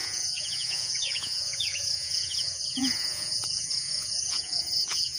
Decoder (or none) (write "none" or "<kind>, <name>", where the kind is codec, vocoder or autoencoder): vocoder, Vocos